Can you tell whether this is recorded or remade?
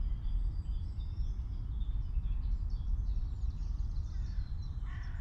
recorded